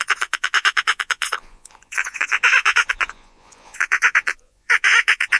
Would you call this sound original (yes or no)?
no